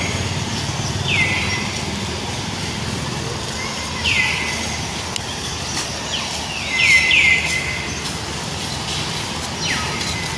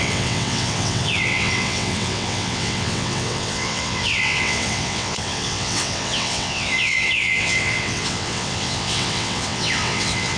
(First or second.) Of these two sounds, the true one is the first